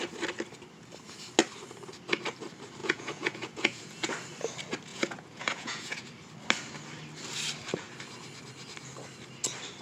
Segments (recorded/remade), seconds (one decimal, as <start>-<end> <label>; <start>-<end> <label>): 0.0-2.8 recorded; 2.8-4.1 remade; 4.1-4.9 recorded; 4.9-6.0 remade; 6.0-9.8 recorded